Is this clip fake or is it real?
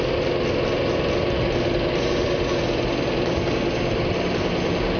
real